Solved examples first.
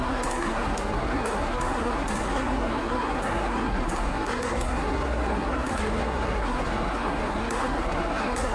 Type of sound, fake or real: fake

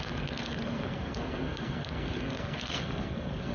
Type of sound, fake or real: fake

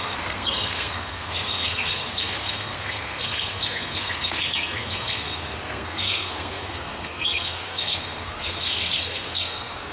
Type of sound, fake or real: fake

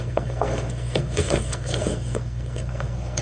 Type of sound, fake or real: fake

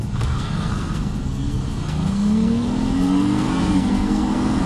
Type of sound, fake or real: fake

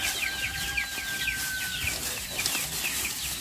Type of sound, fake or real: real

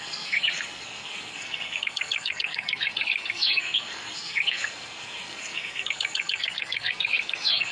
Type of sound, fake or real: fake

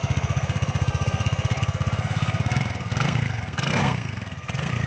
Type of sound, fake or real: fake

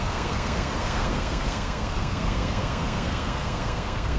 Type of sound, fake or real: fake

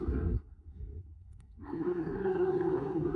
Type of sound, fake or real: fake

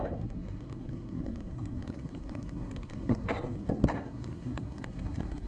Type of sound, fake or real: fake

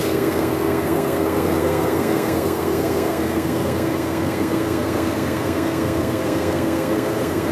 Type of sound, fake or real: fake